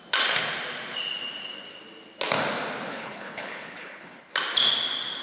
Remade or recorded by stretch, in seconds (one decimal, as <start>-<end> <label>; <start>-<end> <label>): 0.0-2.9 recorded; 2.9-4.3 remade; 4.3-5.2 recorded